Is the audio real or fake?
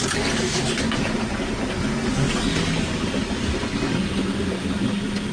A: real